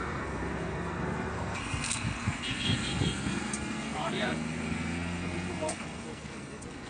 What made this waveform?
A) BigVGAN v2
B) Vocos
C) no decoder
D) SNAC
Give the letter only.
D